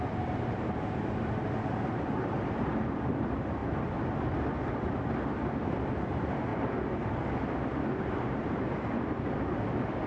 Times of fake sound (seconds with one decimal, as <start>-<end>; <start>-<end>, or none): 0.0-3.6; 5.9-6.5; 8.1-10.1